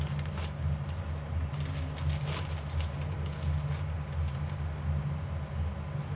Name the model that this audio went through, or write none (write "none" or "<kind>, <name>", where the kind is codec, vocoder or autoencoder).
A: none